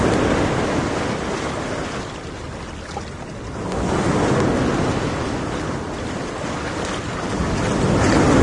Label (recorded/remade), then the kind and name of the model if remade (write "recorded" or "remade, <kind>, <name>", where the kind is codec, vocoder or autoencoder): recorded